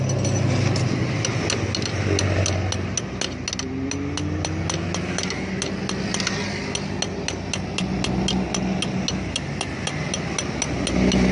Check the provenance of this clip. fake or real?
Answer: real